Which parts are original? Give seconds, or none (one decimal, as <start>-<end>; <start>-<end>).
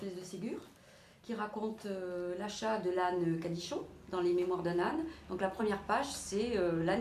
0.0-4.9; 5.6-7.0